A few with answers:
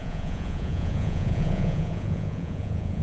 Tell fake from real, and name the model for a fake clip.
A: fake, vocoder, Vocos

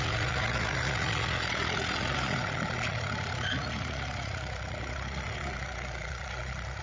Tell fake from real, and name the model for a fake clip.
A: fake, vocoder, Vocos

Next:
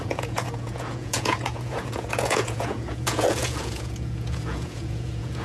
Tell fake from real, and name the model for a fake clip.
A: fake, vocoder, Vocos